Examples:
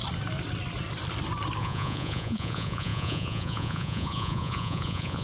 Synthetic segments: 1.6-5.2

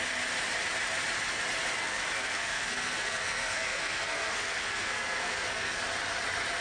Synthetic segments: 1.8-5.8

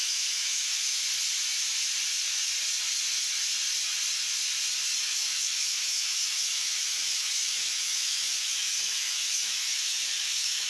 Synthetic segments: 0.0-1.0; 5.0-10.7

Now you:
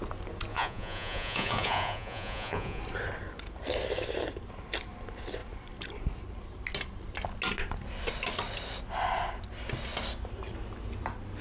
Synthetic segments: 0.5-2.8

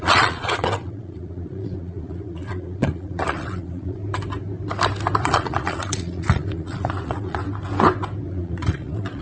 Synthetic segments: 0.0-4.0; 5.2-7.4; 8.3-9.2